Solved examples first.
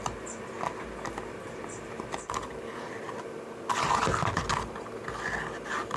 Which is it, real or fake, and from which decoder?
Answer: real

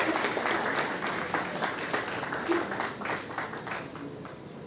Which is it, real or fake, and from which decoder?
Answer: real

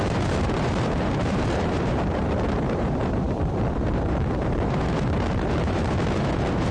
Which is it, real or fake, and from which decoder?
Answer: fake, vocoder, BigVGAN v2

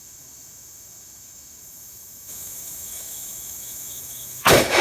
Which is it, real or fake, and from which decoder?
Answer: fake, autoencoder, DAC-VAE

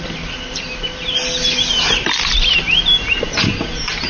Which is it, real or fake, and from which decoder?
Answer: real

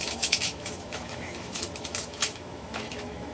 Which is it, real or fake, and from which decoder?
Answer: fake, autoencoder, DAC-VAE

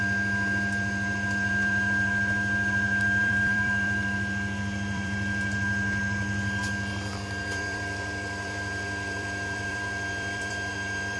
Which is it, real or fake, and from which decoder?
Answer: fake, vocoder, BigVGAN v2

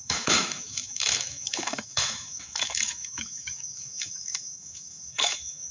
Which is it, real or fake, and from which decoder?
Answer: fake, autoencoder, DAC-VAE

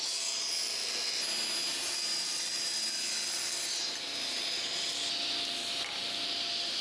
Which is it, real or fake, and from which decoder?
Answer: real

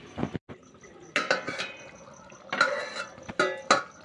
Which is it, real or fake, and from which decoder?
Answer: real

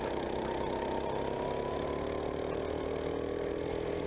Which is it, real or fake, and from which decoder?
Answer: real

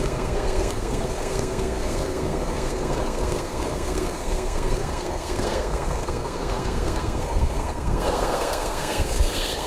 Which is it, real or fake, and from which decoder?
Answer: fake, codec, SNAC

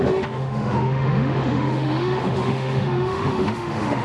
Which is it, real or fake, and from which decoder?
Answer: fake, autoencoder, DAC-VAE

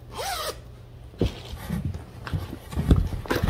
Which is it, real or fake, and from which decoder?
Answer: real